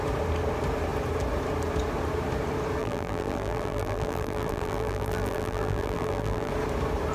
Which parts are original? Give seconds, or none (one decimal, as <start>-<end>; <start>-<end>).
0.0-2.8; 6.5-7.1